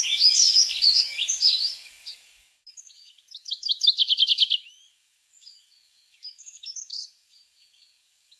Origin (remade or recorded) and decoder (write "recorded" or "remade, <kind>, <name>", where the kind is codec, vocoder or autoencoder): remade, codec, DAC